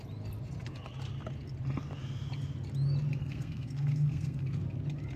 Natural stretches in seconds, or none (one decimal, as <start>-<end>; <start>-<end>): 0.0-3.2; 4.6-5.2